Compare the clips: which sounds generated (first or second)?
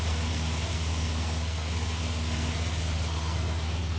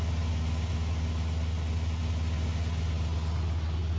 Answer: first